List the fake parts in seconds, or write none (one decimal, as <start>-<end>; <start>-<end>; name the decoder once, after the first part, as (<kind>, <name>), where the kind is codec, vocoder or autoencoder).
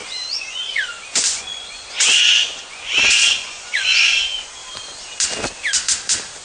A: 0.0-4.6 (vocoder, Vocos)